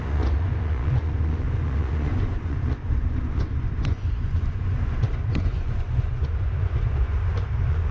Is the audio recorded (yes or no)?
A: no